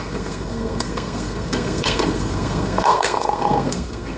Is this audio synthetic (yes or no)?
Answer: yes